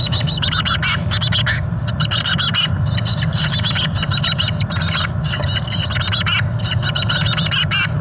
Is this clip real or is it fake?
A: real